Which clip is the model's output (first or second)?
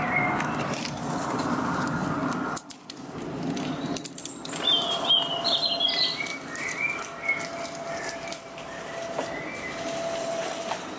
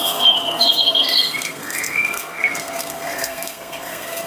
second